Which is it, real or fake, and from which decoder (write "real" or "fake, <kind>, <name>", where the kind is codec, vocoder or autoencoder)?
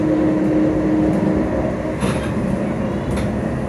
real